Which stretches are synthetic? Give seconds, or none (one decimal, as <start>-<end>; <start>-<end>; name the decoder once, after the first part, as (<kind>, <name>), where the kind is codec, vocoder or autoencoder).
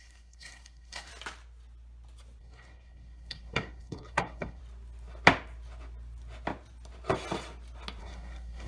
0.0-1.1 (codec, SNAC); 2.4-4.6; 8.0-8.7